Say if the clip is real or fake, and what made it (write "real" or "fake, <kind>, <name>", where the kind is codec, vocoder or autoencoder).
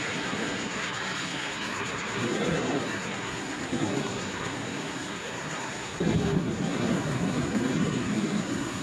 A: fake, codec, SNAC